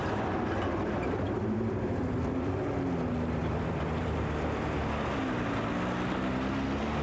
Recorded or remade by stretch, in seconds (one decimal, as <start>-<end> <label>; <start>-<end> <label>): 0.0-2.5 remade; 2.5-3.4 recorded; 3.4-4.6 remade; 4.6-7.0 recorded